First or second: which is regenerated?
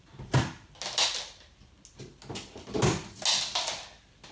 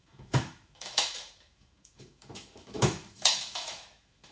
second